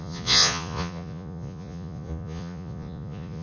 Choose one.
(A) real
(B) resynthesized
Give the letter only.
B